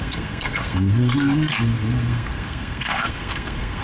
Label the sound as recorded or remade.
remade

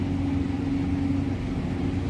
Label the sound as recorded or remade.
recorded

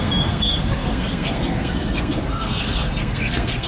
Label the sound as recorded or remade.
remade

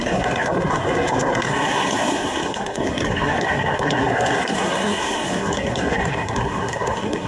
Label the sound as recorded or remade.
remade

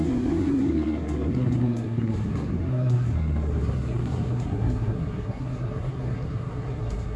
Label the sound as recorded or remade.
remade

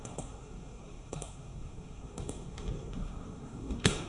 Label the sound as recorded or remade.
remade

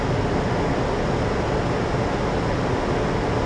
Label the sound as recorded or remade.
recorded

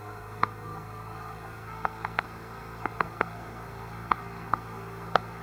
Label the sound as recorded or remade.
remade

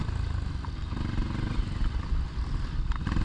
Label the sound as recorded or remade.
recorded